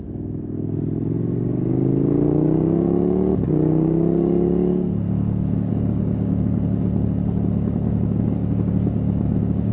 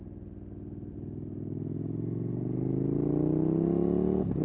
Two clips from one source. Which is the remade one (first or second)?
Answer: first